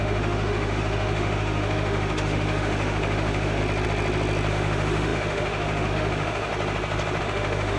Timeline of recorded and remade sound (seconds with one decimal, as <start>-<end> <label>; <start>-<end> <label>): 0.0-3.6 remade; 3.6-4.5 recorded; 4.5-6.5 remade; 6.5-7.2 recorded; 7.2-7.8 remade